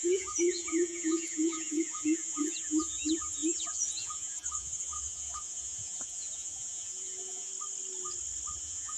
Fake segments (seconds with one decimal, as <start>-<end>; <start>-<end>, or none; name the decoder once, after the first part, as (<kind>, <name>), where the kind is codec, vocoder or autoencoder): 0.0-7.5 (vocoder, Vocos); 8.6-9.0